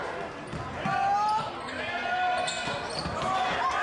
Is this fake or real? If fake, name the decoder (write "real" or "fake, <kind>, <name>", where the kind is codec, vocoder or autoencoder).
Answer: real